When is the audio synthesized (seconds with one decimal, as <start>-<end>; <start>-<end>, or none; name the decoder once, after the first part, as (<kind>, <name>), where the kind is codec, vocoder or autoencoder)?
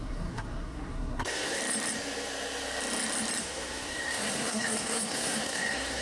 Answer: 0.0-1.6 (codec, SNAC); 3.4-6.0